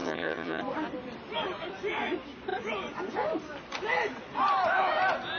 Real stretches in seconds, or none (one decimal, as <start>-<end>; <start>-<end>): 0.6-5.4